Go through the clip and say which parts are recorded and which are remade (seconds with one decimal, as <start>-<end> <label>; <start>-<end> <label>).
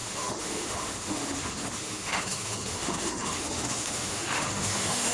0.0-5.1 remade